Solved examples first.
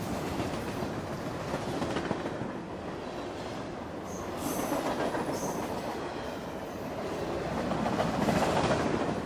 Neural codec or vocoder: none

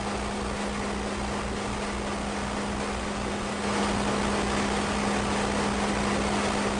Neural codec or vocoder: none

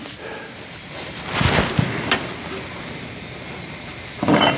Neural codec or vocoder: none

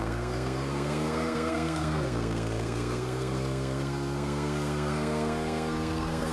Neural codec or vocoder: codec, SNAC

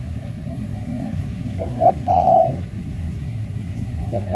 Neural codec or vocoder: codec, SNAC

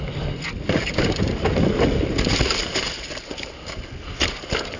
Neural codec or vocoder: none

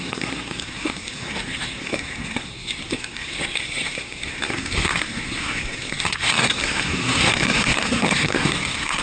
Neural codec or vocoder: codec, SNAC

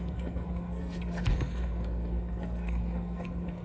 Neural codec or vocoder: codec, SNAC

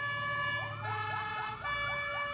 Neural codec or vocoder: none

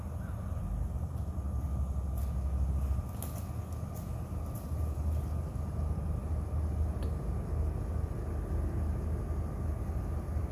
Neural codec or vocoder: none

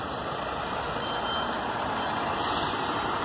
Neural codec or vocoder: none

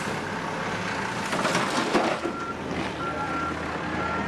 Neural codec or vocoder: none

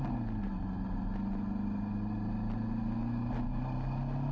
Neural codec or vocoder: none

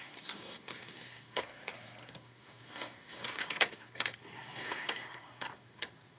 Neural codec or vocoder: codec, SNAC